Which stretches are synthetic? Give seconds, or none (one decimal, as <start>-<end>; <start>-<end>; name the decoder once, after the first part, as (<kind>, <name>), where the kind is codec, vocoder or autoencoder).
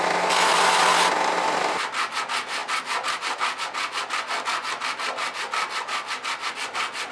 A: none